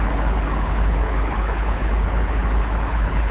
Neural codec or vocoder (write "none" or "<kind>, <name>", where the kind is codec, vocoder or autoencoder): codec, HILCodec